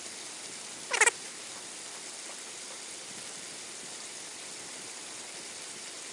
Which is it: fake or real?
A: real